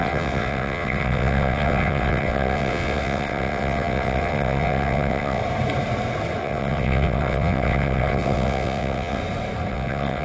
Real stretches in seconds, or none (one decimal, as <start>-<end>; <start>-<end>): 5.4-6.4; 9.2-9.7